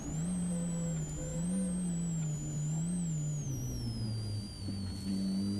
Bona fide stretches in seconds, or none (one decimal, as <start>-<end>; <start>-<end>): 0.0-5.6